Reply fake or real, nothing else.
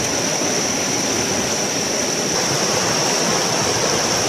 real